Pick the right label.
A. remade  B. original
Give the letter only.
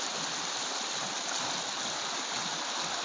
B